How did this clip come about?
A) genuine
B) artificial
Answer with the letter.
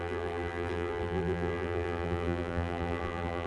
B